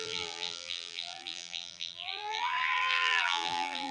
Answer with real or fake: fake